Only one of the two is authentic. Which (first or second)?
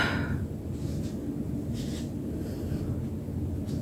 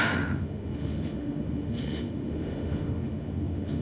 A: first